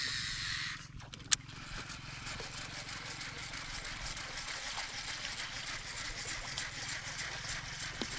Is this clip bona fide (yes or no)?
yes